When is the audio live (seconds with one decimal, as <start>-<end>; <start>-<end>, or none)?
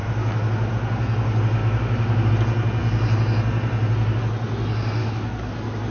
0.0-1.6; 2.3-5.0; 5.5-5.9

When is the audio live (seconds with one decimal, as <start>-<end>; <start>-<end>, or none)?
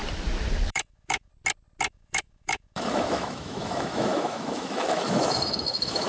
0.0-0.7; 1.3-1.9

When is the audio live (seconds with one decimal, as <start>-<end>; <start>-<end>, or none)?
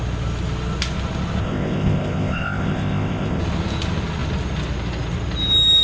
0.0-1.4; 3.4-5.8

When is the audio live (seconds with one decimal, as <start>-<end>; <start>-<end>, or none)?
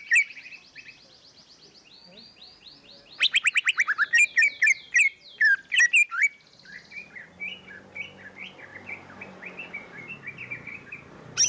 0.0-11.5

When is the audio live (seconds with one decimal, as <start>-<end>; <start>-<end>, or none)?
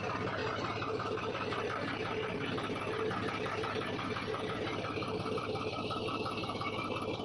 0.0-7.2